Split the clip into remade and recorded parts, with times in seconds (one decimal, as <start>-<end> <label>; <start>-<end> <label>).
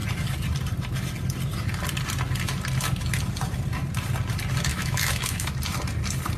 0.0-4.7 recorded; 4.7-5.5 remade; 5.5-6.4 recorded